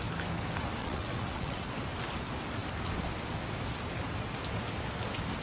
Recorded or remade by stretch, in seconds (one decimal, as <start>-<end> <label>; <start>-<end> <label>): 0.0-0.8 recorded; 0.8-1.6 remade; 1.6-5.4 recorded